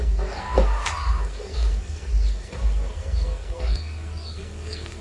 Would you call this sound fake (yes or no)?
yes